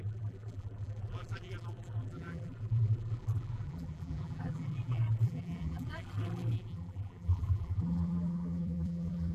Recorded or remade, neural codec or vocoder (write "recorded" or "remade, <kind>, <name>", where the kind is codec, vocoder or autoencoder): remade, vocoder, BigVGAN v2